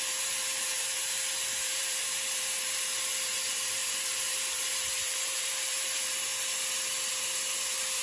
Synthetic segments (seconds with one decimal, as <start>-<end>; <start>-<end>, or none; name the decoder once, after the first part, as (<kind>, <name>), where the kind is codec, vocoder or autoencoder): 0.0-6.3 (vocoder, BigVGAN v2); 7.1-8.0